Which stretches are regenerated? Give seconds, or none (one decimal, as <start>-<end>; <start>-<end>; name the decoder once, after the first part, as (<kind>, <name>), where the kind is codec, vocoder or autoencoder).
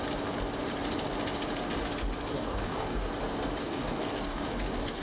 2.3-3.1 (codec, DAC); 3.6-5.0